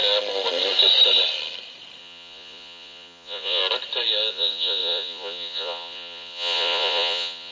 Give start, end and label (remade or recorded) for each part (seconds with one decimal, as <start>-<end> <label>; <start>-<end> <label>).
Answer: 0.0-2.0 recorded; 2.0-3.6 remade; 3.6-4.3 recorded; 4.3-7.5 remade